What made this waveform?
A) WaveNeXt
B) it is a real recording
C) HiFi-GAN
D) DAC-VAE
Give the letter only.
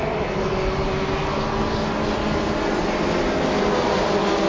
B